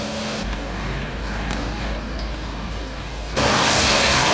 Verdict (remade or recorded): remade